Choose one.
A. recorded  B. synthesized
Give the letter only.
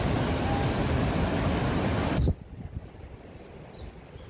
A